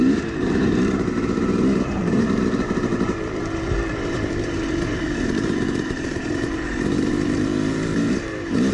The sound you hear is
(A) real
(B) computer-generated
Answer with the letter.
B